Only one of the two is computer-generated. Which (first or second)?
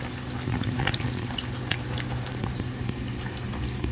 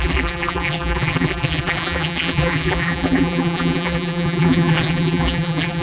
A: second